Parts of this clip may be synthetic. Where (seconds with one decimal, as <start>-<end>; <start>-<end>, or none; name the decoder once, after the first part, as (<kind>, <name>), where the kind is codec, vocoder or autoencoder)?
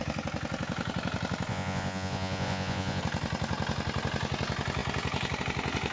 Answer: 1.5-3.0 (vocoder, Vocos)